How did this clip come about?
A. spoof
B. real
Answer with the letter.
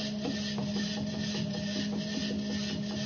B